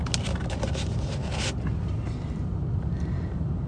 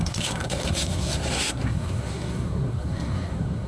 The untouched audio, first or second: first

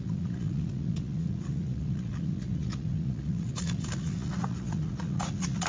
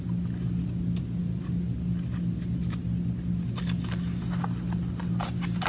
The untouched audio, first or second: second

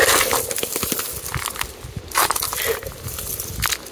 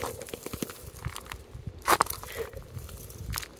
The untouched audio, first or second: first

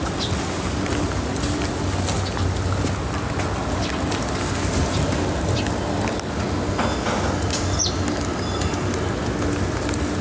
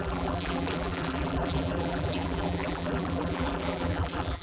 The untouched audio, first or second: first